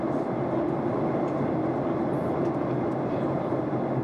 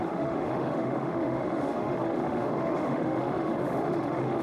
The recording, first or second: first